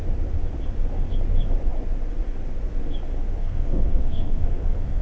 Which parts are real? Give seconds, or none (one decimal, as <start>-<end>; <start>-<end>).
0.0-3.4